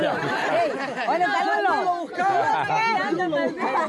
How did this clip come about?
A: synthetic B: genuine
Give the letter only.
B